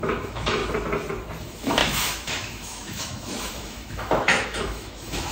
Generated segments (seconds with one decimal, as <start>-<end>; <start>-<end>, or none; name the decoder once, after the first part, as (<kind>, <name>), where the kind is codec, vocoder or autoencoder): 0.0-0.6 (autoencoder, DAC-VAE); 1.4-5.3

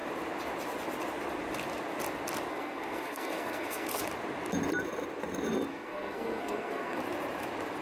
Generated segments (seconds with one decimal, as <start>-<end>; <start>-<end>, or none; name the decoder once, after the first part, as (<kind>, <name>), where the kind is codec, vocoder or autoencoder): 2.5-4.0 (codec, SNAC); 5.7-7.0

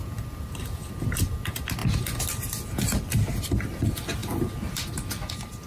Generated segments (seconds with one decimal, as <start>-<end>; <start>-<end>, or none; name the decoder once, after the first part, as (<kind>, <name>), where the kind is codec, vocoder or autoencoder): 0.0-0.9 (vocoder, BigVGAN v2)

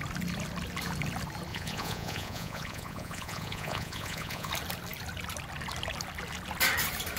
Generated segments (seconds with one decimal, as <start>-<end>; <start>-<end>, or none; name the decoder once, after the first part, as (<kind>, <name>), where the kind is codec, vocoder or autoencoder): 1.5-4.5 (vocoder, Vocos)

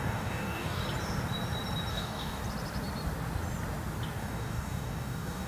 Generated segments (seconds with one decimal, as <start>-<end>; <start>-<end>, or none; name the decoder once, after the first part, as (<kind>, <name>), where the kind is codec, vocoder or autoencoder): 0.0-0.8 (codec, DAC); 1.9-2.4; 4.2-5.5

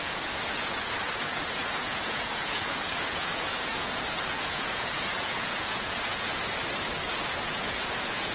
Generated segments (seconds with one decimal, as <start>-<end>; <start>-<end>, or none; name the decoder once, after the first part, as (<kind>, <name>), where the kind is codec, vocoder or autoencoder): 0.0-6.6 (vocoder, Vocos); 7.1-8.3